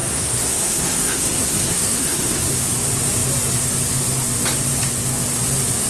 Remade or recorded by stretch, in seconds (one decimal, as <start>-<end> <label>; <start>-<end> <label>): 0.0-2.5 remade; 2.5-5.9 recorded